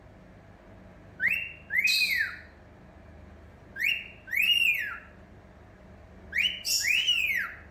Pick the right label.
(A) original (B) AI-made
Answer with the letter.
A